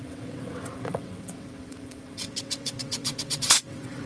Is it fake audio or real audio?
fake